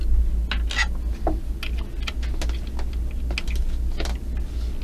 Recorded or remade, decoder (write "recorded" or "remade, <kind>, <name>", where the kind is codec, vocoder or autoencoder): recorded